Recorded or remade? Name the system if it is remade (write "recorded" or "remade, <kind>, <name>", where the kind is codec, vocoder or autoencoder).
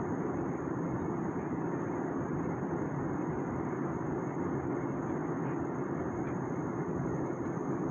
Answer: recorded